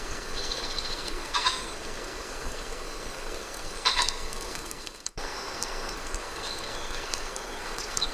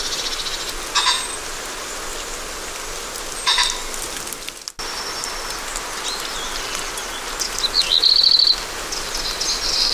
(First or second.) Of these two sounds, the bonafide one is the second